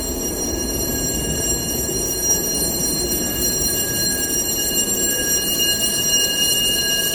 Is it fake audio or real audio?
real